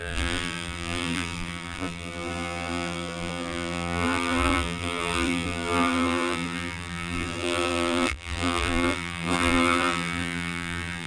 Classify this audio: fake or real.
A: fake